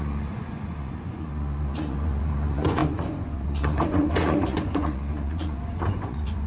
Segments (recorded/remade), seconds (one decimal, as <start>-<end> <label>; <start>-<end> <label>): 0.0-6.5 remade